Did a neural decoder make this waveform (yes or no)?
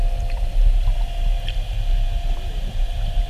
no